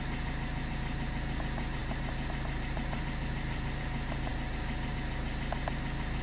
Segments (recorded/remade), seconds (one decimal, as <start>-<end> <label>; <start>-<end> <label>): 0.0-6.2 recorded